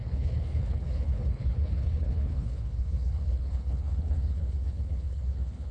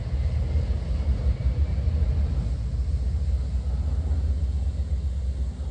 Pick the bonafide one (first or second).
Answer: second